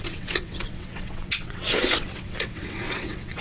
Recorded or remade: remade